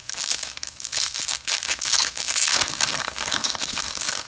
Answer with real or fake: fake